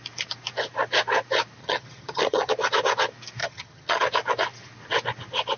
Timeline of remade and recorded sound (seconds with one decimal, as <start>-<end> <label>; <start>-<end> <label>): 0.0-1.6 recorded; 1.6-2.5 remade; 2.5-3.4 recorded; 3.4-4.0 remade; 4.0-5.6 recorded